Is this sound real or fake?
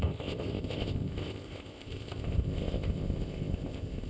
fake